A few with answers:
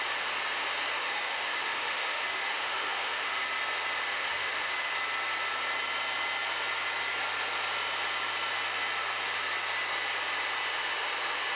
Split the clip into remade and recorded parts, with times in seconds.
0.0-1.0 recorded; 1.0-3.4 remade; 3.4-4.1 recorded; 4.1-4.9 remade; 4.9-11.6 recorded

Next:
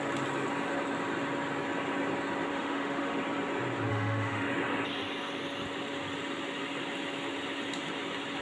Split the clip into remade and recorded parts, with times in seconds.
0.0-2.5 recorded; 2.5-3.2 remade; 3.2-3.9 recorded; 3.9-4.5 remade; 4.5-8.4 recorded

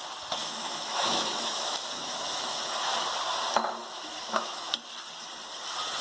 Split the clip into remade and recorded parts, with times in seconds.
0.0-0.4 recorded; 0.4-2.9 remade; 2.9-3.8 recorded; 3.8-4.7 remade; 4.7-6.0 recorded

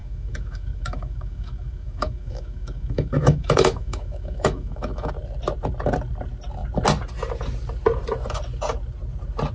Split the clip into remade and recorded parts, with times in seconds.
0.0-5.1 remade; 5.1-9.5 recorded